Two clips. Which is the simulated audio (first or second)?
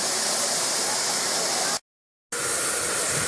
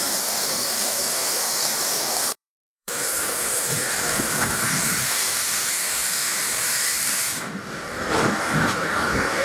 second